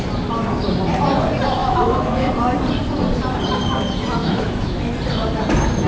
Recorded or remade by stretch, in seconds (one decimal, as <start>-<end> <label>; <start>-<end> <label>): 0.0-1.6 recorded; 1.6-2.3 remade; 2.3-4.2 recorded; 4.2-4.9 remade; 4.9-5.9 recorded